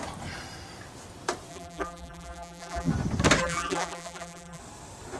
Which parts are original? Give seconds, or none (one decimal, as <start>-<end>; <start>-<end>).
0.0-1.5; 2.9-3.4; 4.6-5.2